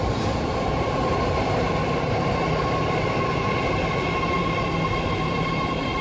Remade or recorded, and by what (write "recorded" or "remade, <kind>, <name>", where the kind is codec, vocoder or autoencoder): remade, vocoder, BigVGAN v2